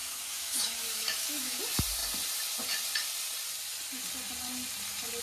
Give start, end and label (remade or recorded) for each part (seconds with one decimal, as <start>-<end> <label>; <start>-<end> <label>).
0.0-1.6 remade; 1.6-5.2 recorded